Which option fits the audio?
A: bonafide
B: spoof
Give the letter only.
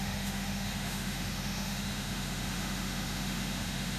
B